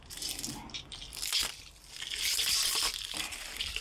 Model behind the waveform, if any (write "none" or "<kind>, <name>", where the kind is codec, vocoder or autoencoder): none